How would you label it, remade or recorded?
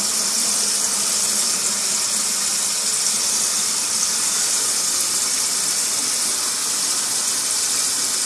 recorded